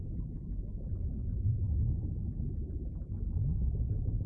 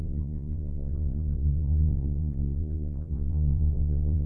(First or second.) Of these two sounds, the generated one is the second